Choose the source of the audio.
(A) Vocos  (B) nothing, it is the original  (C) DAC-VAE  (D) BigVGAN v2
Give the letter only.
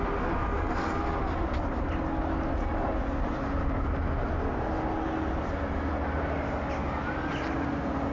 B